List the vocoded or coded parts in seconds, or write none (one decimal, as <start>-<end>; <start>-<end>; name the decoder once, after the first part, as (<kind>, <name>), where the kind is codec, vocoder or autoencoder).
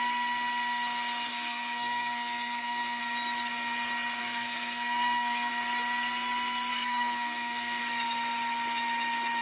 1.3-3.0 (codec, SNAC); 4.2-5.5; 6.7-7.8